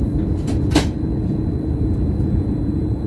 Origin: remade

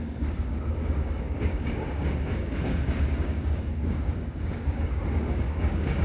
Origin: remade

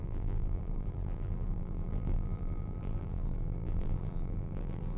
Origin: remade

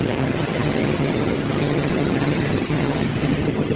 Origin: remade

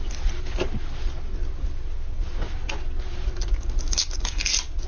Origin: recorded